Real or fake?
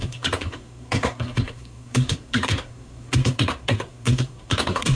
fake